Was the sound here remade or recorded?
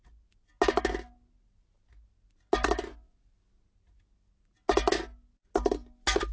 recorded